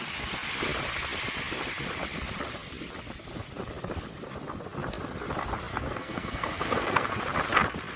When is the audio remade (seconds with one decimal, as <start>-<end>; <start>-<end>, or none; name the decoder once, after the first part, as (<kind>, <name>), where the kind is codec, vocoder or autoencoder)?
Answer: 5.7-7.1 (codec, SNAC)